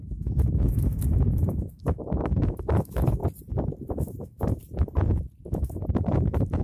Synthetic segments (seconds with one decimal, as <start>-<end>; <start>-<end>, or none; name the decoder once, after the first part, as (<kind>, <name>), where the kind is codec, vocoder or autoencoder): 0.0-3.2 (autoencoder, DAC-VAE); 3.8-4.6; 5.4-6.6